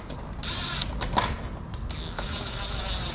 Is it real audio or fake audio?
real